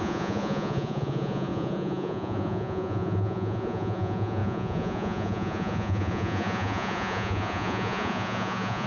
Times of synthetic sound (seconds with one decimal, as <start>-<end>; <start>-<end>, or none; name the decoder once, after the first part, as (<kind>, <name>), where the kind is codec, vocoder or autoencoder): 0.0-8.9 (vocoder, Vocos)